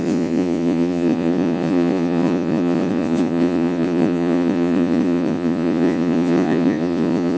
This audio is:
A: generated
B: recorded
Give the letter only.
A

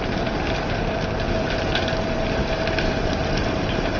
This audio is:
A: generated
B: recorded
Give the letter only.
B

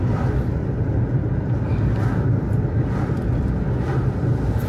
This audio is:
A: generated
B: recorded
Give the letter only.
B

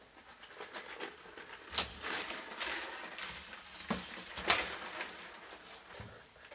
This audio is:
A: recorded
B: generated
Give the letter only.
A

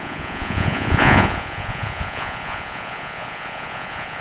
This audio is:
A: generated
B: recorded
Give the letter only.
A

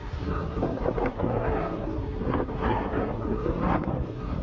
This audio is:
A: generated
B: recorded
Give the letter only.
A